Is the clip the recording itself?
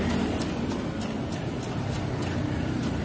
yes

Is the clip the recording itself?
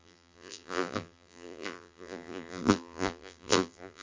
no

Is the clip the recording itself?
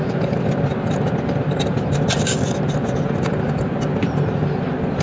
yes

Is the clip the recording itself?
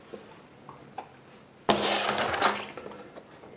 yes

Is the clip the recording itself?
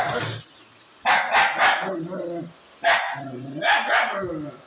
yes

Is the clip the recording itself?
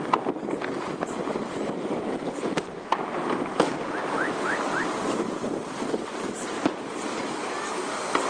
yes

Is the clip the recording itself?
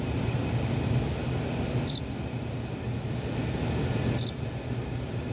yes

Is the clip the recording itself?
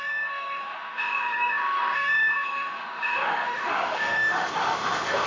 no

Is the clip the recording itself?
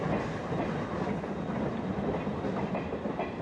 yes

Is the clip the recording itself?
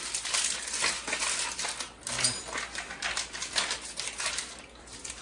yes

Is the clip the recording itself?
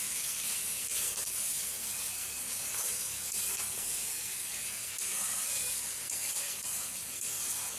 no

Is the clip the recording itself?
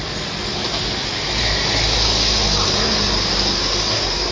yes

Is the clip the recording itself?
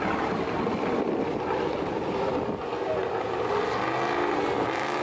yes